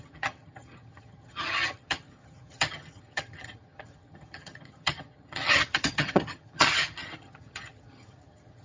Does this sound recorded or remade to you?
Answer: remade